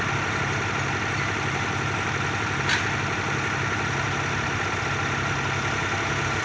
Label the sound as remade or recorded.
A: recorded